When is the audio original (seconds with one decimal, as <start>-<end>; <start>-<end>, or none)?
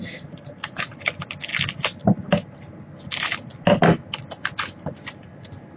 0.0-5.8